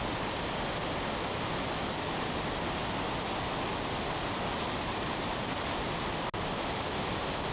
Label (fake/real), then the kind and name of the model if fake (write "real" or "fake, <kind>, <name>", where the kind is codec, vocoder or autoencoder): real